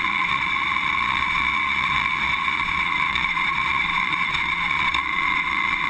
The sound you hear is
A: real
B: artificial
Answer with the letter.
B